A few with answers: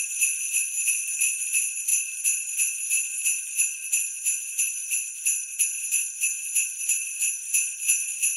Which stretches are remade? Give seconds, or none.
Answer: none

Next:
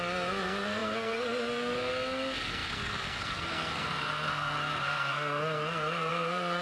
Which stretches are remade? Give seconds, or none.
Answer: 0.0-6.6